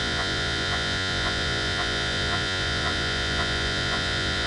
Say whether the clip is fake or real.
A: fake